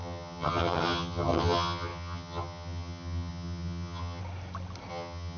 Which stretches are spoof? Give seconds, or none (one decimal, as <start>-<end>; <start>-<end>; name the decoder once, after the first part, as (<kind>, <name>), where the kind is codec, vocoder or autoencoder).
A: 0.0-4.2 (vocoder, HiFi-GAN); 4.9-5.4